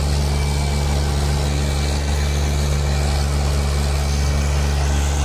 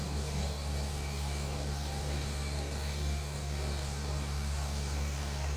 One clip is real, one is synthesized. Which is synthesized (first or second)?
second